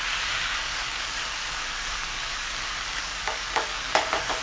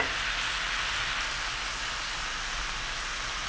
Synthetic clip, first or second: first